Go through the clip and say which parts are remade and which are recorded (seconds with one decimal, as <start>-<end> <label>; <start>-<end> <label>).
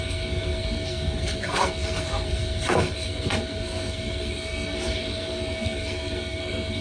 0.0-6.8 remade